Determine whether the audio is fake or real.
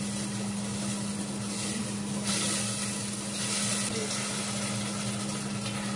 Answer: real